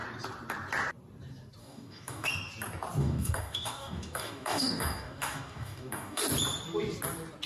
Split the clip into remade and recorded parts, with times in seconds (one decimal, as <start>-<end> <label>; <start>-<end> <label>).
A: 0.0-1.6 recorded; 1.6-2.3 remade; 2.3-3.0 recorded; 3.0-6.2 remade; 6.2-7.5 recorded